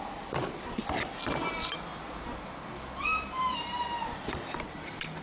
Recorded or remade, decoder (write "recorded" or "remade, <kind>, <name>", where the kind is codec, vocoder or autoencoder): recorded